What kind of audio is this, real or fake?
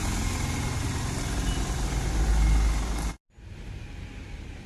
real